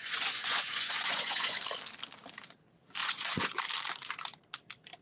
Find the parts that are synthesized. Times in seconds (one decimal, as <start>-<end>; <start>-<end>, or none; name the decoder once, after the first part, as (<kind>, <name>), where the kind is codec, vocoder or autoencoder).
0.0-1.6 (vocoder, Vocos); 3.0-3.6